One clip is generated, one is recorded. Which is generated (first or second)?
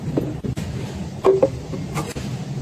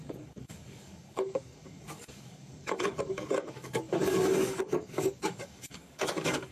second